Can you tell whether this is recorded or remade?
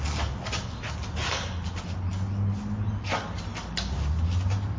recorded